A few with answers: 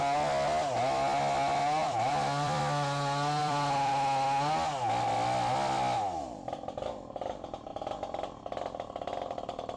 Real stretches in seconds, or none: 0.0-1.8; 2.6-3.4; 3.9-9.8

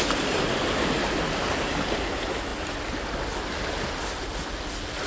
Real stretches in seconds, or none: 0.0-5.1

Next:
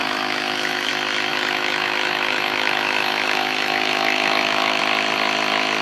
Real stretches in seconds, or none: 0.9-1.3; 4.8-5.8